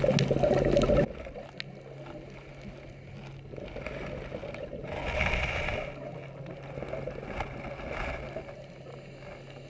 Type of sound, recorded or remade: recorded